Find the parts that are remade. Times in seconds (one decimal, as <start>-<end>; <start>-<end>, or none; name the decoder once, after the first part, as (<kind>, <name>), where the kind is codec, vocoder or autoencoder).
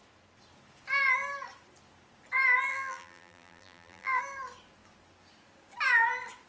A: 2.7-4.2 (vocoder, BigVGAN v2)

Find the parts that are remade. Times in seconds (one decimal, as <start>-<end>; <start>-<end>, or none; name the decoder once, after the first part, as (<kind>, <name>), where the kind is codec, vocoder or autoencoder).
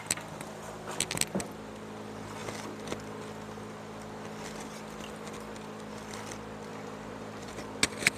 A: 6.7-7.5 (vocoder, BigVGAN v2)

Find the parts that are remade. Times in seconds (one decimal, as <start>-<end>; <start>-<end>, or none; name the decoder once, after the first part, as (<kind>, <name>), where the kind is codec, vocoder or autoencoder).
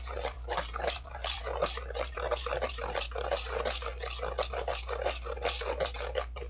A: 0.0-3.9 (vocoder, BigVGAN v2); 4.5-6.5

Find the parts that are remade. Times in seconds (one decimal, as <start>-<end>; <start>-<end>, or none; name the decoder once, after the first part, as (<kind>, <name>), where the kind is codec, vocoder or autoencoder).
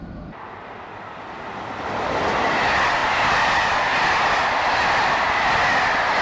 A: 3.0-5.5 (vocoder, BigVGAN v2)